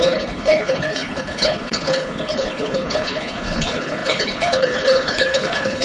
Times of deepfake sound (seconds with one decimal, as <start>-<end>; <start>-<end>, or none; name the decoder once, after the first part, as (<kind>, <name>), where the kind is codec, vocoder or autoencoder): 0.0-5.8 (codec, HILCodec)